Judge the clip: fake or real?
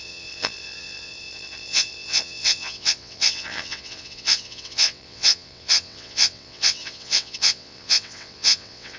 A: fake